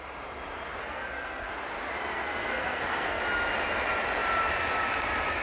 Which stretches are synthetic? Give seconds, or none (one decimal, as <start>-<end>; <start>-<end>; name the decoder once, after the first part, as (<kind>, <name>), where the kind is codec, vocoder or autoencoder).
0.8-1.5 (codec, SNAC); 2.1-3.2